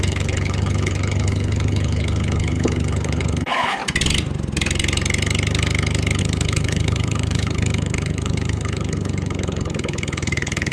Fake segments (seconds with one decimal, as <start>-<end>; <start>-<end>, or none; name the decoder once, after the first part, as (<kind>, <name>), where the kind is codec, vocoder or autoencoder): 0.0-3.8 (codec, HILCodec); 6.2-10.7